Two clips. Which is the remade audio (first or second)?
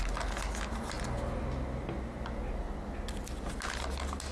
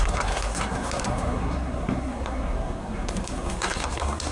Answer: second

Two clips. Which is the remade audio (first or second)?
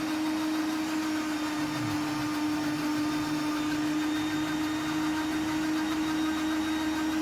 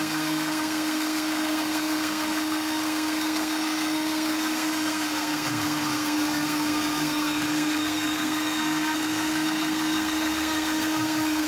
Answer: second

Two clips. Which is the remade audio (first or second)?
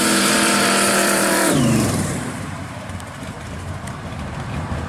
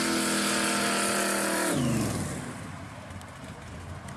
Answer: first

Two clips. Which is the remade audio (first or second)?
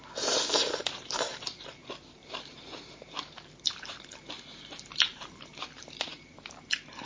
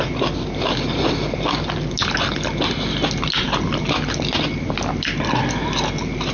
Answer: first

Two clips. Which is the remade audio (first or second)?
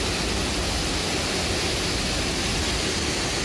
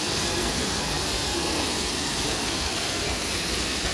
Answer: second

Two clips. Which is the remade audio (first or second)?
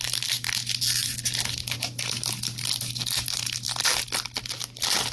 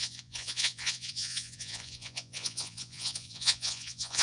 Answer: second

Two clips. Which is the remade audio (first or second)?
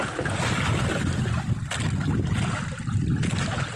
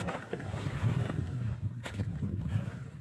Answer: second